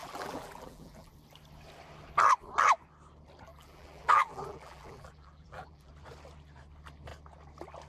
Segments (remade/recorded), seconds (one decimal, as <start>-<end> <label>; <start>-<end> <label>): 0.0-1.1 remade; 1.1-3.5 recorded; 3.5-5.9 remade; 5.9-7.9 recorded